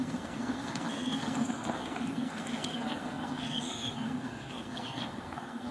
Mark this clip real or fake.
fake